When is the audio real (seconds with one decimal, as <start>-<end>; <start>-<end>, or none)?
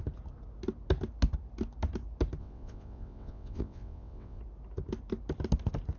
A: 0.0-2.4; 4.4-6.0